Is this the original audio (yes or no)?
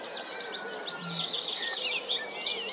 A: yes